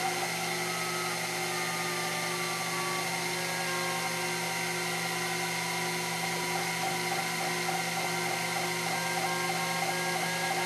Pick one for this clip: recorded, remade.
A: recorded